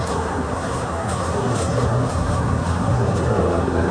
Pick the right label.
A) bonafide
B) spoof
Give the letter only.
B